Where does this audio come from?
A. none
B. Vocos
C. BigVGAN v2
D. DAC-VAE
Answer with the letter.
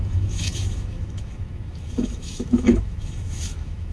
D